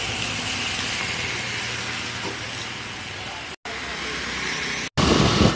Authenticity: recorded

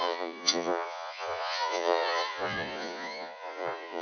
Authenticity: remade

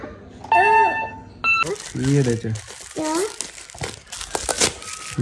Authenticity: recorded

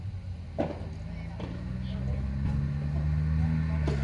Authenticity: recorded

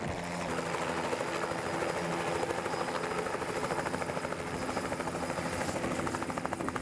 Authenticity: recorded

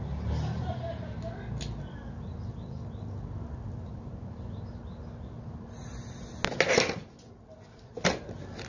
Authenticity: recorded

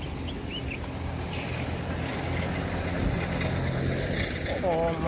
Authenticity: recorded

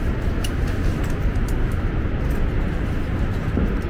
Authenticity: recorded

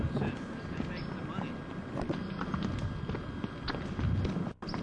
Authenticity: recorded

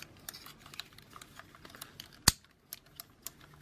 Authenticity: recorded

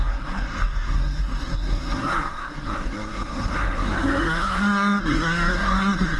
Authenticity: remade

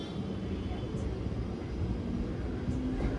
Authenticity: recorded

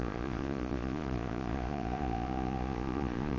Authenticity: remade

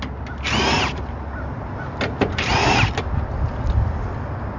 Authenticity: recorded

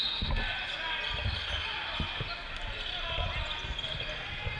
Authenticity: recorded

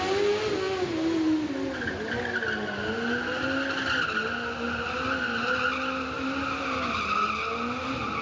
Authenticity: recorded